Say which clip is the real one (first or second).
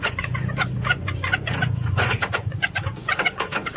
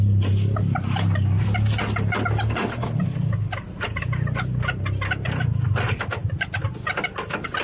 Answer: second